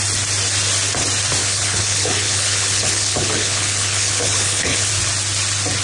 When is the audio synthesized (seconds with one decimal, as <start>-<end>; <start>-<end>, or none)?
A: 1.4-4.9

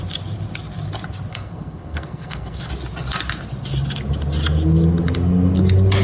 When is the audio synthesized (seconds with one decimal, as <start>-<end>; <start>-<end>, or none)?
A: 1.3-2.7

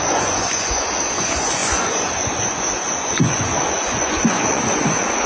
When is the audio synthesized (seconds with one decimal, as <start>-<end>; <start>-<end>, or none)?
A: 0.0-5.3